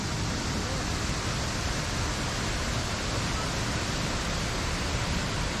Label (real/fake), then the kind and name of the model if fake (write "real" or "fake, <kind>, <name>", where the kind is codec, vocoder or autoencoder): real